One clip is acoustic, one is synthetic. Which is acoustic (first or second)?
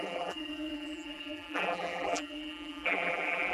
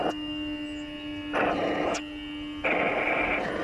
second